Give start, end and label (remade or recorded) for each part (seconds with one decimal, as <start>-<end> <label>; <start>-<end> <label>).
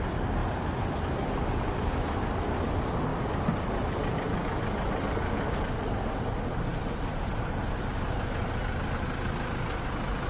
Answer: 0.0-10.3 recorded